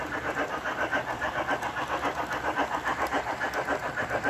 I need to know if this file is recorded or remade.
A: recorded